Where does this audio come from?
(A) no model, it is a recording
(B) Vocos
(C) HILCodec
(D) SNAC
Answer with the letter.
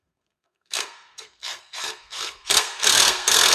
D